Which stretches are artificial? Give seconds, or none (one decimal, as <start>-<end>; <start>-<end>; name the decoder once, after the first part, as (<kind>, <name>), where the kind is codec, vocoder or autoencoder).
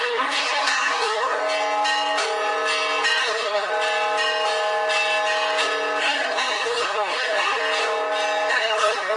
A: 0.0-1.4 (codec, SNAC); 3.2-3.7; 6.0-7.6; 8.5-9.2